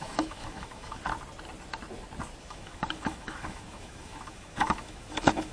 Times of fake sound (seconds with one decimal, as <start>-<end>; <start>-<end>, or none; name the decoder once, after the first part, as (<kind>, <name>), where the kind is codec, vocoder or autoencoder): 0.0-1.0 (autoencoder, DAC-VAE); 2.4-5.5